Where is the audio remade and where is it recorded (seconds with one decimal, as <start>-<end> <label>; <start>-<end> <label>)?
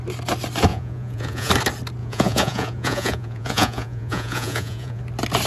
0.0-0.7 recorded; 0.7-1.5 remade; 1.5-2.0 recorded; 2.0-5.0 remade; 5.0-5.5 recorded